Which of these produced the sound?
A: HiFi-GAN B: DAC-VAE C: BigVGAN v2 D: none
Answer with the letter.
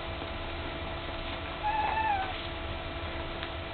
D